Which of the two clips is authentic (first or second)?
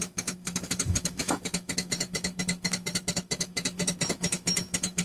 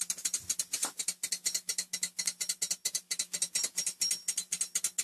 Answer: second